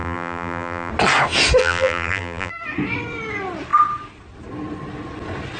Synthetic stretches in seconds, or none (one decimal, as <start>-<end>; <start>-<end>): 0.0-0.9; 1.6-2.5